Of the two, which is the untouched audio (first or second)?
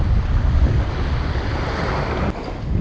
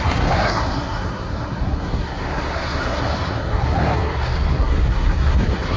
first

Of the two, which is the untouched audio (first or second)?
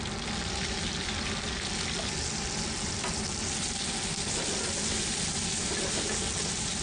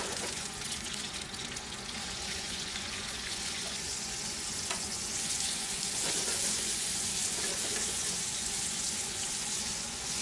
first